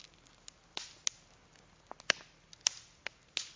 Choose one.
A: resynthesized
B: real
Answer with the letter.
B